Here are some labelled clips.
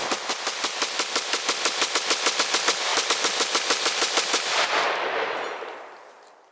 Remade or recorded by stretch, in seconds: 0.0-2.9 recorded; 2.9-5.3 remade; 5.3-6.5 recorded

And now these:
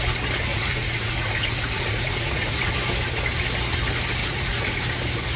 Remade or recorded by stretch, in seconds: 0.0-0.5 recorded; 0.5-2.7 remade; 2.7-4.2 recorded; 4.2-4.8 remade; 4.8-5.4 recorded

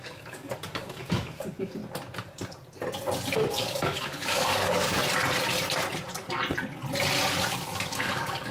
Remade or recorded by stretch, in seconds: 0.0-1.8 remade; 1.8-3.5 recorded; 3.5-5.0 remade; 5.0-7.5 recorded; 7.5-8.5 remade

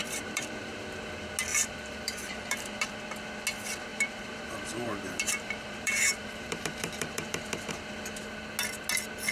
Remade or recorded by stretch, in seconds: 0.0-0.8 remade; 0.8-1.5 recorded; 1.5-2.9 remade; 2.9-3.9 recorded; 3.9-7.7 remade; 7.7-9.3 recorded